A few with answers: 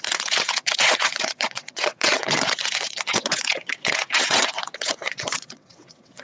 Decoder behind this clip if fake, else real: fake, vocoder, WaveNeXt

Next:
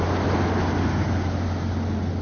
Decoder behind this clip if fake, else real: real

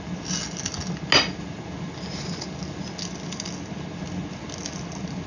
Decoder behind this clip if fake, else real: real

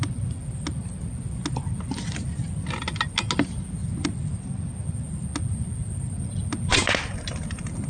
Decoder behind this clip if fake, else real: real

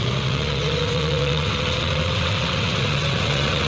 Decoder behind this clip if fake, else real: fake, vocoder, WaveNeXt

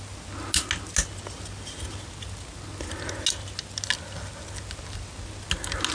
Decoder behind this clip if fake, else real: real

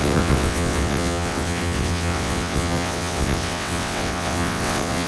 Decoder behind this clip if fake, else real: fake, vocoder, WaveNeXt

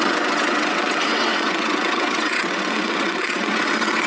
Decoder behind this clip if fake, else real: fake, vocoder, WaveNeXt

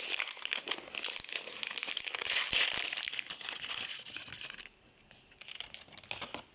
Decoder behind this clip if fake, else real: real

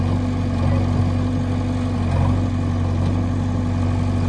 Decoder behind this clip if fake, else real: real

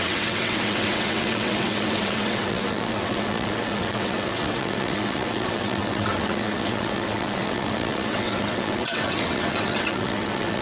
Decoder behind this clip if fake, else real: fake, vocoder, WaveNeXt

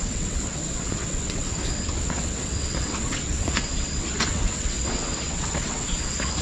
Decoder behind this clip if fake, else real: fake, vocoder, WaveNeXt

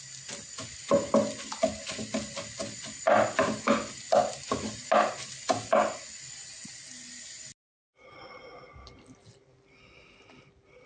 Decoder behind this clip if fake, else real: real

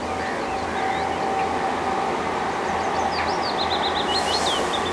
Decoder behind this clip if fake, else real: real